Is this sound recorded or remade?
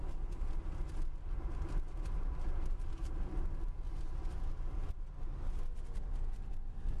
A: recorded